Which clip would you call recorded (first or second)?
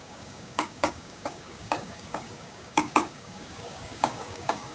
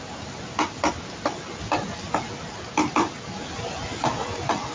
second